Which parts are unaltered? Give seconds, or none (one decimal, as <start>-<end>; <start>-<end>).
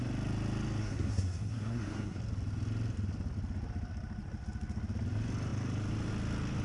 0.0-0.8; 2.2-6.6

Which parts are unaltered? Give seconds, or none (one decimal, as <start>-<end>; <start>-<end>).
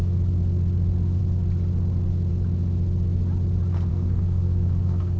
0.0-3.9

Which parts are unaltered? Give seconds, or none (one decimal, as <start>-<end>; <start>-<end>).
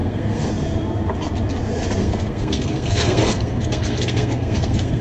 0.5-2.0